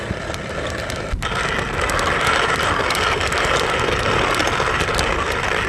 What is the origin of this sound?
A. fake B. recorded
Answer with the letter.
B